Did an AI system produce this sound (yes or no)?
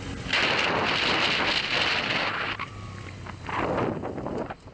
no